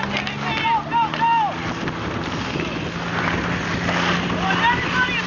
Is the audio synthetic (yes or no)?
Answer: no